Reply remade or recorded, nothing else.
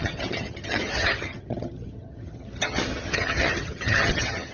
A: remade